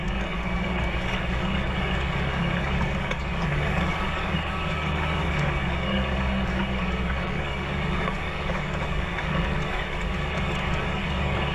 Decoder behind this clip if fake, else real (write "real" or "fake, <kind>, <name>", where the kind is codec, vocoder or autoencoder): fake, codec, DAC